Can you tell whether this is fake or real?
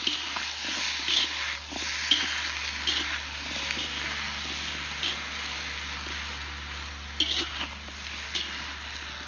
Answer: real